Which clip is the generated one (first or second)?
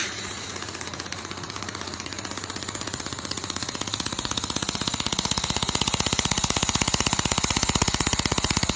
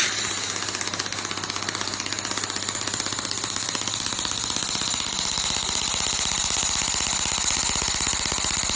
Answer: first